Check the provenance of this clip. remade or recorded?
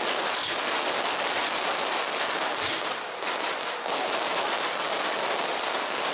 recorded